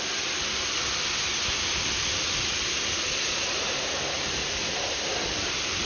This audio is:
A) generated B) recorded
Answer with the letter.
B